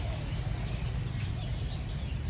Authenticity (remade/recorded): recorded